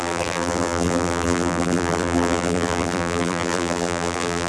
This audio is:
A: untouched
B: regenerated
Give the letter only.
B